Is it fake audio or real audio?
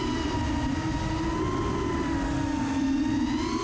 real